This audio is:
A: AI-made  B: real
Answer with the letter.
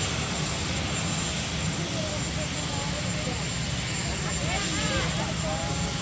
B